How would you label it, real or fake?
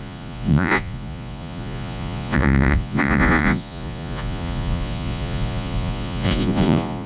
fake